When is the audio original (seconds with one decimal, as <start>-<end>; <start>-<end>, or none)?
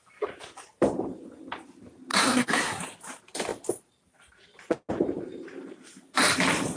0.0-2.1; 2.8-6.8